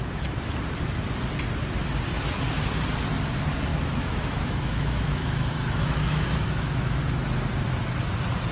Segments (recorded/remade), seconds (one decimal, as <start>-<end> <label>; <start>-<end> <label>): 0.0-3.7 recorded; 3.7-7.0 remade; 7.0-8.5 recorded